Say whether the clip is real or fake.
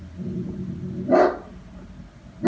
real